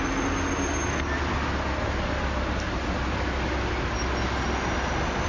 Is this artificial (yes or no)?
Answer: no